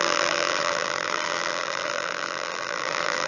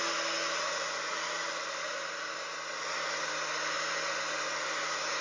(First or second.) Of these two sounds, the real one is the second